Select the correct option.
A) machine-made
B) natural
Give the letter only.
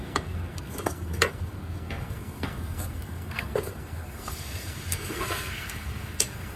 A